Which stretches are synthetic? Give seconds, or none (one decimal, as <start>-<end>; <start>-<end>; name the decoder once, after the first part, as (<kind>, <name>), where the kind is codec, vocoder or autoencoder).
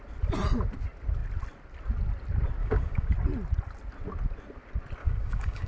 2.6-3.1 (codec, DAC); 5.0-5.7